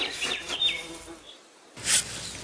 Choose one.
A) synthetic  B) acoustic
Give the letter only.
B